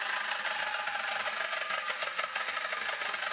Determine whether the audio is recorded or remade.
recorded